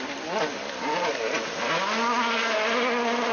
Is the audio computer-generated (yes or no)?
no